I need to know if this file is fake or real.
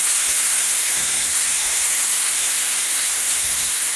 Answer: fake